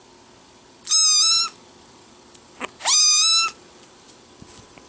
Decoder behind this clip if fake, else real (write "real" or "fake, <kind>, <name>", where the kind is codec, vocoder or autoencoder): real